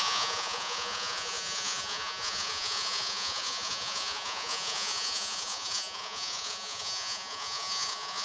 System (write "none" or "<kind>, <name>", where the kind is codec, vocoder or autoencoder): vocoder, Vocos